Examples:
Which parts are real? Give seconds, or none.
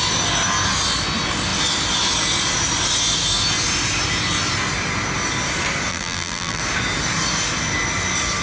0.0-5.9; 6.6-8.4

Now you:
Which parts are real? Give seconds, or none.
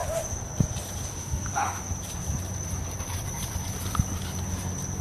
0.0-1.1; 1.8-5.0